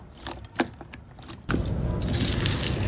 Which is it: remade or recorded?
recorded